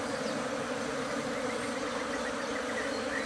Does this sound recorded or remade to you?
recorded